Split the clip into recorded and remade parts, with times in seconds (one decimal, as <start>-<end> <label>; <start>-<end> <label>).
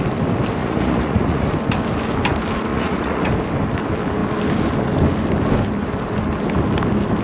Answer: 0.0-0.6 recorded; 0.6-1.5 remade; 1.5-2.7 recorded; 2.7-3.3 remade; 3.3-7.2 recorded